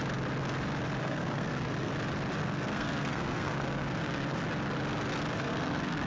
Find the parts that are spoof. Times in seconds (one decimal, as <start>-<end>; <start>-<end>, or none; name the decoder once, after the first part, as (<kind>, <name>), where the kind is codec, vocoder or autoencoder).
1.0-1.9 (codec, SNAC); 2.4-4.4; 5.3-6.1